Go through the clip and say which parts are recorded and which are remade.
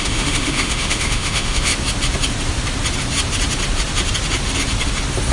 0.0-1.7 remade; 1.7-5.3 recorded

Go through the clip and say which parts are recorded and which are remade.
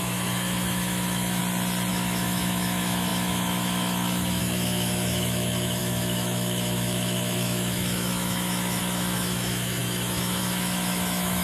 0.0-1.4 remade; 1.4-1.9 recorded; 1.9-11.4 remade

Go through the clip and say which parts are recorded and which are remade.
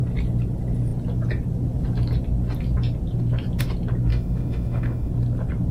0.0-4.1 recorded; 4.1-5.1 remade; 5.1-5.7 recorded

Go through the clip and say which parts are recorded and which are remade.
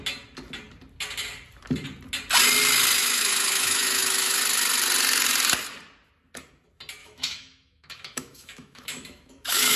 0.0-3.0 recorded; 3.0-4.4 remade; 4.4-7.0 recorded; 7.0-9.8 remade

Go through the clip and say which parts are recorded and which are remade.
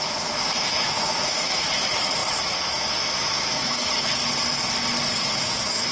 0.0-4.2 remade; 4.2-5.1 recorded; 5.1-5.9 remade